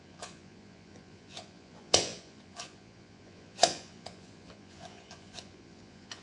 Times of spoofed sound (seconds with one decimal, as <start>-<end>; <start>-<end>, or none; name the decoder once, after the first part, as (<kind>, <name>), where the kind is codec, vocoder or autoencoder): 0.0-6.2 (vocoder, Vocos)